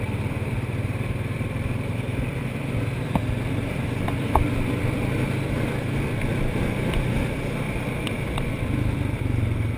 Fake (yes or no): yes